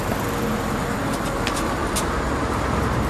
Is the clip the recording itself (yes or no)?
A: no